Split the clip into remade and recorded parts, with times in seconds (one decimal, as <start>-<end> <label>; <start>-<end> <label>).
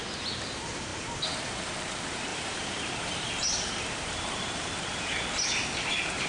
0.0-2.3 recorded; 2.3-6.3 remade